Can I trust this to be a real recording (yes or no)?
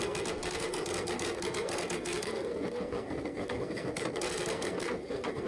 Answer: no